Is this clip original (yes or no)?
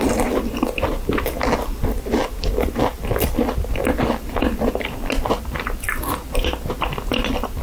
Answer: yes